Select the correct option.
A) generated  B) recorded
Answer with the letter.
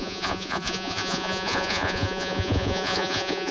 A